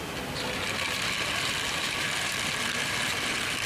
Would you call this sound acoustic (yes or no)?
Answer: yes